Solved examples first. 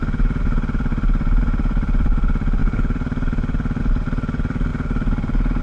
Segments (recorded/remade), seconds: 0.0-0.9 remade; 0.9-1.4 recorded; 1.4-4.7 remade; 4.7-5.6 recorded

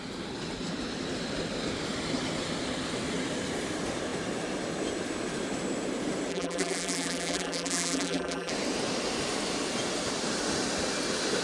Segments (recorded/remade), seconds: 0.0-6.3 recorded; 6.3-8.5 remade; 8.5-11.4 recorded

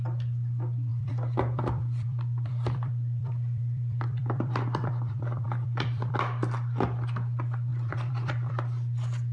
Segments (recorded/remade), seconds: 0.0-0.9 recorded; 0.9-6.1 remade; 6.1-7.7 recorded; 7.7-8.5 remade; 8.5-9.3 recorded

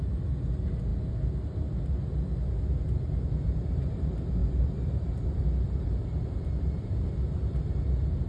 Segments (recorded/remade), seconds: 0.0-4.4 recorded; 4.4-8.3 remade

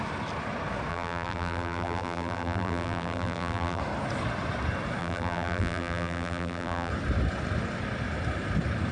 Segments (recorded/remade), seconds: 0.0-0.9 recorded; 0.9-3.8 remade; 3.8-5.0 recorded; 5.0-6.9 remade; 6.9-8.9 recorded

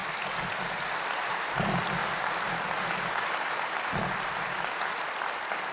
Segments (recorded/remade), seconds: 0.0-5.7 recorded

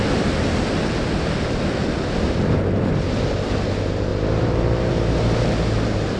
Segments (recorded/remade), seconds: 0.0-4.1 recorded; 4.1-4.9 remade; 4.9-6.2 recorded

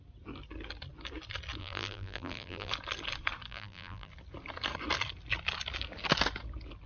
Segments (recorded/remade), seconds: 0.0-1.6 recorded; 1.6-2.7 remade; 2.7-3.5 recorded; 3.5-4.1 remade; 4.1-6.9 recorded